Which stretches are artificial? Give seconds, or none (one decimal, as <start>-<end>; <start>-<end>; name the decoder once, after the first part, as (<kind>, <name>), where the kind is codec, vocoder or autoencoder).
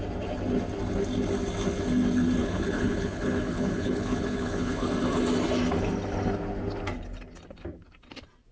2.4-4.9 (codec, HILCodec)